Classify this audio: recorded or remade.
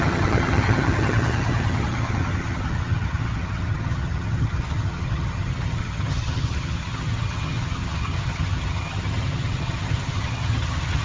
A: remade